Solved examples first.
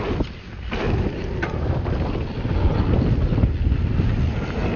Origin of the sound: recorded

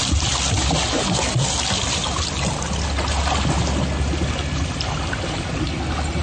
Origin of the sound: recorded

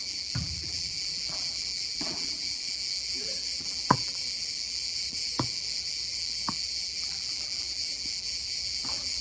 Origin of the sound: remade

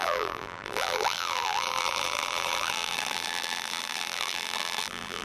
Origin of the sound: remade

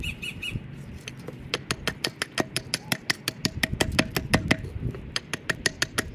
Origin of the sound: recorded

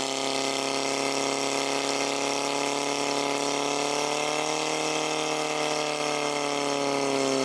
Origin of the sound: recorded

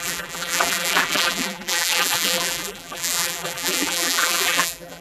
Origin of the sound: remade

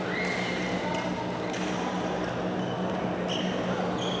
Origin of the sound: recorded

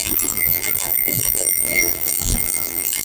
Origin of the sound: remade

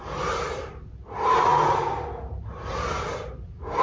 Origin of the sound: remade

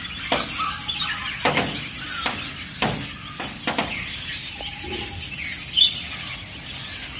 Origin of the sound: recorded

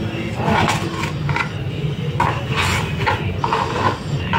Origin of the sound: recorded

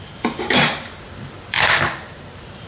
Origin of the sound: remade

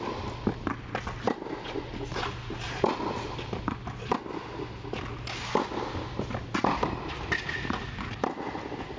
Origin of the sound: recorded